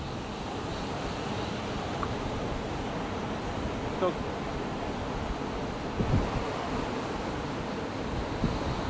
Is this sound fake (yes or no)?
no